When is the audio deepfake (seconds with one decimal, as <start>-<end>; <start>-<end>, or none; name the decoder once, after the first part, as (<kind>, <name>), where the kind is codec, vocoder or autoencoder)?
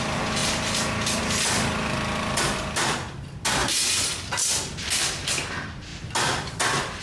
none